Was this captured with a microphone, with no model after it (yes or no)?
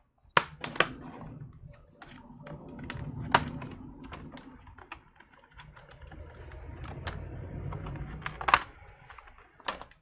yes